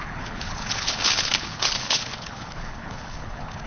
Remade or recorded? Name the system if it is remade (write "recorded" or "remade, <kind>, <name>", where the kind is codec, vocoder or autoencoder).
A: remade, codec, HILCodec